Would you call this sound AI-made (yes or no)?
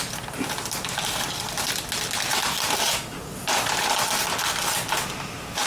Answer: no